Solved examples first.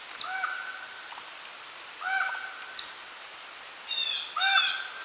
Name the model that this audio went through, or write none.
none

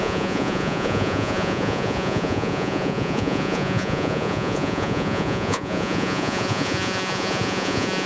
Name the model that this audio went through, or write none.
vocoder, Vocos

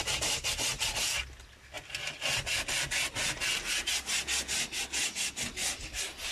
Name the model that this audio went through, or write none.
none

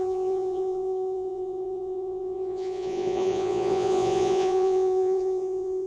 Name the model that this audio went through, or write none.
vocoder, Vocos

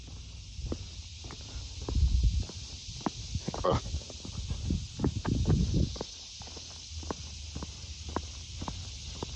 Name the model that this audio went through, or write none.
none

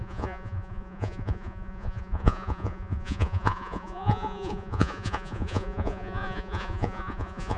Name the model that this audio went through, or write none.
vocoder, Vocos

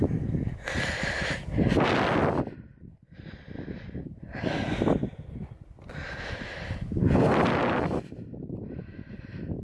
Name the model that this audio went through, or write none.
none